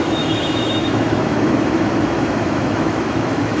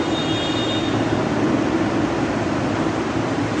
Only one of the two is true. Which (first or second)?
second